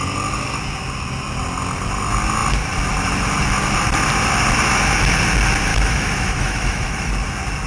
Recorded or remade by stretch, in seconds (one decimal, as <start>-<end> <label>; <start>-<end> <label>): 0.0-5.7 recorded; 5.7-7.1 remade; 7.1-7.7 recorded